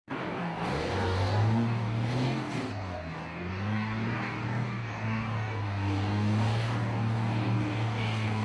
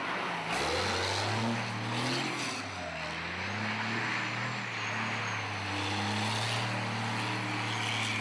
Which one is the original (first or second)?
second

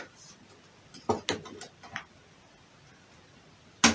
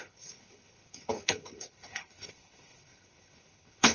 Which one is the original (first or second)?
first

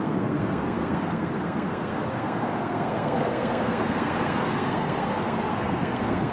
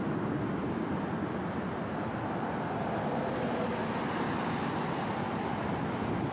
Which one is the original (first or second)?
second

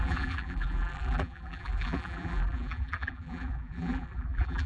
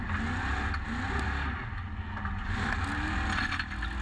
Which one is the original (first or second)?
second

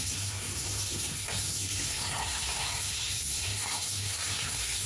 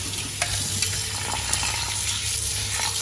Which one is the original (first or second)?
second